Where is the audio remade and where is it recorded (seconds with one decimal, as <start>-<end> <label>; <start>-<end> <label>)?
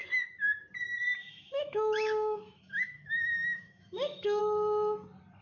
0.0-1.2 recorded; 1.2-4.4 remade; 4.4-5.4 recorded